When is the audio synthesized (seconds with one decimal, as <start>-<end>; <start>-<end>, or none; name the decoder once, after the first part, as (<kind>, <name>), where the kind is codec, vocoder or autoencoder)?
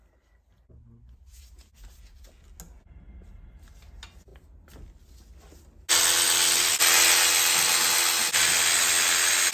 none